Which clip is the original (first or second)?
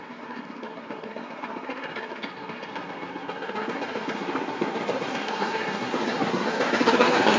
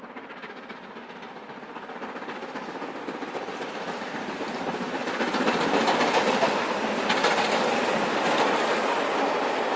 second